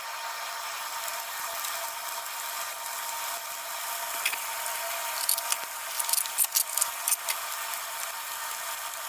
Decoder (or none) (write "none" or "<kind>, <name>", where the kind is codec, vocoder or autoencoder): none